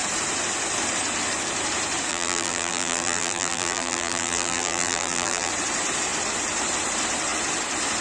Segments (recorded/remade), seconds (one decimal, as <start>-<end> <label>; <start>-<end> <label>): 0.0-2.1 recorded; 2.1-5.5 remade; 5.5-8.0 recorded